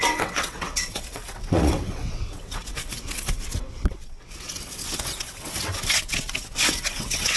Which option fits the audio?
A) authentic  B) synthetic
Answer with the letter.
B